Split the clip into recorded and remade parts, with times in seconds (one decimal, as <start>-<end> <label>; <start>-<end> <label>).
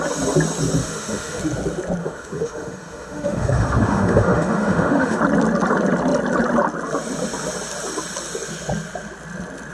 0.0-0.8 recorded; 0.8-1.4 remade; 1.4-2.0 recorded; 2.0-5.2 remade; 5.2-9.7 recorded